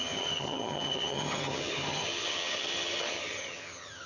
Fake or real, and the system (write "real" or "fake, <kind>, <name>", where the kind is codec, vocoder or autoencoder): fake, vocoder, HiFi-GAN